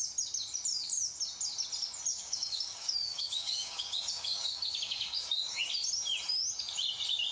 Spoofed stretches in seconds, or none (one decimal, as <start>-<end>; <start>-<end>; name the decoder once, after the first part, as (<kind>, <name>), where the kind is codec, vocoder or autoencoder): 2.1-5.7 (codec, DAC)